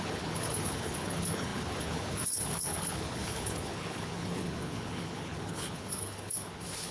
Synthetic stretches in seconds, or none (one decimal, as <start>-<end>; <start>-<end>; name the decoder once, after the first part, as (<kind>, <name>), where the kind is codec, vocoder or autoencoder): 0.0-6.9 (codec, HILCodec)